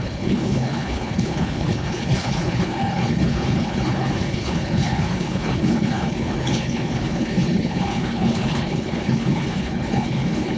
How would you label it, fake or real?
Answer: fake